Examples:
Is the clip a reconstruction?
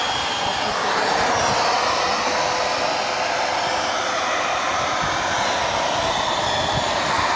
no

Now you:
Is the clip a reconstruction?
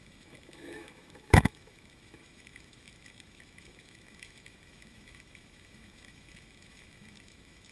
yes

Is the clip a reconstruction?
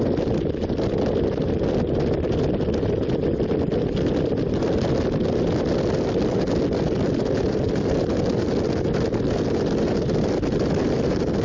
no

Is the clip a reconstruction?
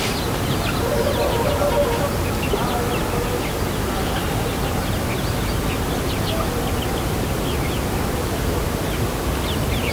no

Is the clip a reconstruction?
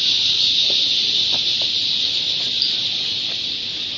no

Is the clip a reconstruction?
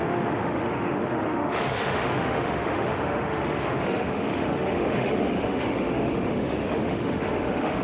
yes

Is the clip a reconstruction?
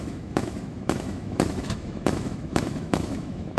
yes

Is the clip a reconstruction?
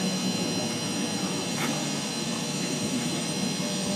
yes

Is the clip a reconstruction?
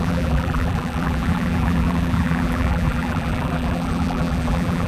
yes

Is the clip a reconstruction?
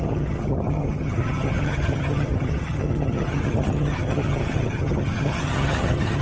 yes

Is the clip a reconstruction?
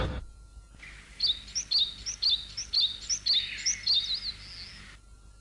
no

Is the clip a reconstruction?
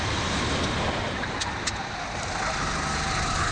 no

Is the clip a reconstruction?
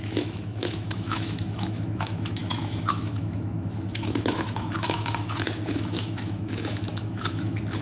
yes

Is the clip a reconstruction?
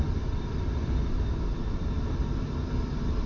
no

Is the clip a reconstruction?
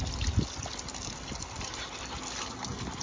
no